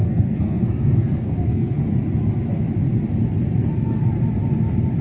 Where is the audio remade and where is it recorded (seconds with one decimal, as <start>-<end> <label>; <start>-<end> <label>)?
0.0-1.8 remade; 1.8-3.6 recorded; 3.6-4.1 remade; 4.1-5.0 recorded